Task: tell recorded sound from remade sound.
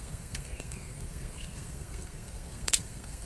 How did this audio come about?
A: remade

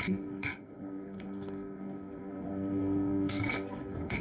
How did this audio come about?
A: remade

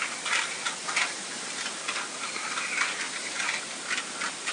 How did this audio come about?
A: recorded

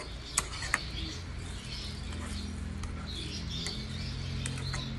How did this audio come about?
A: recorded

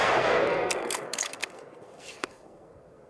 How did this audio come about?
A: remade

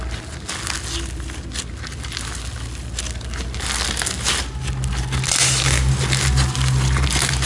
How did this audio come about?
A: recorded